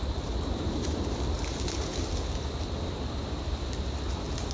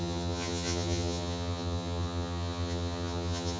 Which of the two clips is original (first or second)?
first